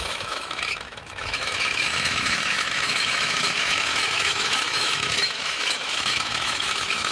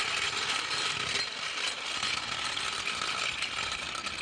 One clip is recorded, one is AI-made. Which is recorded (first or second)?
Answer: second